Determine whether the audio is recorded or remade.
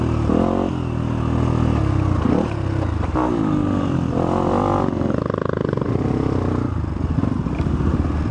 recorded